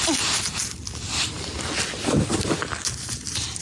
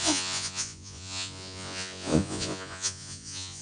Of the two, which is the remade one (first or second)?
second